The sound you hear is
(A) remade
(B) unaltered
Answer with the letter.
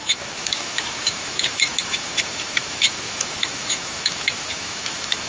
A